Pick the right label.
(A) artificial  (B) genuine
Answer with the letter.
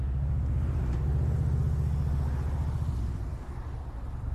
B